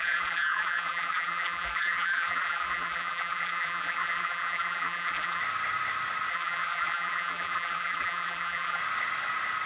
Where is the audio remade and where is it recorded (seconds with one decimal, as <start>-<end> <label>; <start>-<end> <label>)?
0.0-5.4 remade; 5.4-6.3 recorded; 6.3-8.8 remade; 8.8-9.7 recorded

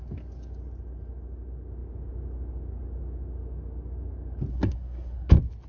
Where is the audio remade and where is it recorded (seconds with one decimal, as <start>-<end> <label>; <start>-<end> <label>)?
0.0-4.5 recorded; 4.5-5.3 remade; 5.3-5.7 recorded

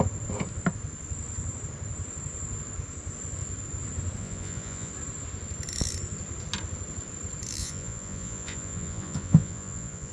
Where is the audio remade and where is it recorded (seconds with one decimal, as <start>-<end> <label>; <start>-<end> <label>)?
0.0-4.2 recorded; 4.2-4.9 remade; 4.9-7.6 recorded; 7.6-10.1 remade

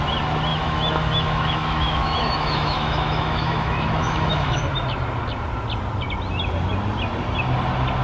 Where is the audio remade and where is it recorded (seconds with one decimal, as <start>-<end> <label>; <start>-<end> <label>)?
0.0-0.5 recorded; 0.5-4.6 remade; 4.6-8.0 recorded

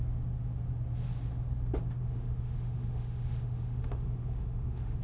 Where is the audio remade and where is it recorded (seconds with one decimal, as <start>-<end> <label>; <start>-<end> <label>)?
0.0-2.0 recorded; 2.0-5.0 remade

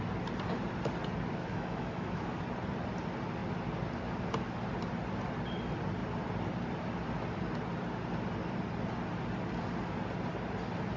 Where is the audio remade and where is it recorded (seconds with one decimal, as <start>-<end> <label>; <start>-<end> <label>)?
0.0-1.4 recorded; 1.4-2.4 remade; 2.4-11.0 recorded